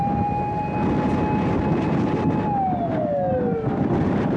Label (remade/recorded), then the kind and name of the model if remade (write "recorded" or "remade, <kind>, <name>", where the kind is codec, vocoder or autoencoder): recorded